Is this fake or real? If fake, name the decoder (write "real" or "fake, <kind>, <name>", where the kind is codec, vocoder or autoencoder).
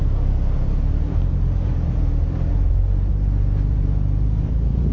fake, vocoder, BigVGAN v2